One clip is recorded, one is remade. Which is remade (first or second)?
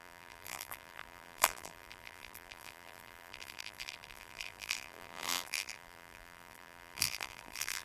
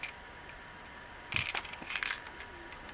first